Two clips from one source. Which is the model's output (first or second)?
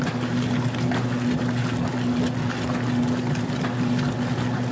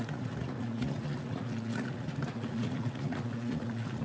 second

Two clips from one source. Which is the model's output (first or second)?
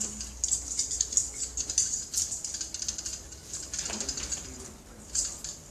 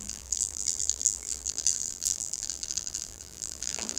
second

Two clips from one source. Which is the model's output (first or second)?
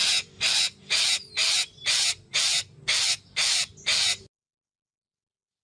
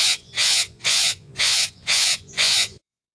second